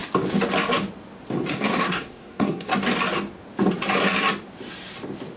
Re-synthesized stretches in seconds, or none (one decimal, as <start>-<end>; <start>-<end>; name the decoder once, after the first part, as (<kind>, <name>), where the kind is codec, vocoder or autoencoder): 1.5-2.7 (codec, SNAC)